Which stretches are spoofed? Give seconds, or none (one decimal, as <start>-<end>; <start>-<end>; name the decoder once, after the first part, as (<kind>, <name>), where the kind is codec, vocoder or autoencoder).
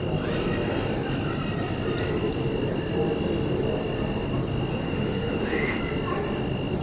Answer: 4.7-5.8 (autoencoder, DAC-VAE)